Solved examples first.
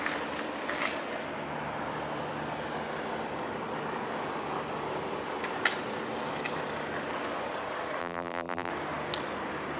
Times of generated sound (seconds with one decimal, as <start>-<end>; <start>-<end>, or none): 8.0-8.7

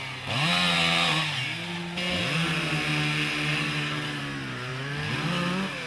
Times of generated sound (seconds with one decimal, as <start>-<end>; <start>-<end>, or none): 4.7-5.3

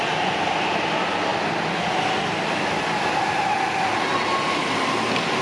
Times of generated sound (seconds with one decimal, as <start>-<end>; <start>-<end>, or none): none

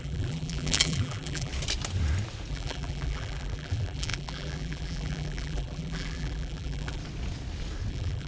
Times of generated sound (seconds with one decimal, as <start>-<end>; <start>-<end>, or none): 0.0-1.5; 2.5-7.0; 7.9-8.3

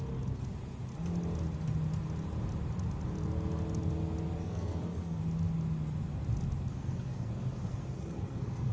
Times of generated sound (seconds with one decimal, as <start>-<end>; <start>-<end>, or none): 4.4-5.2; 6.7-8.7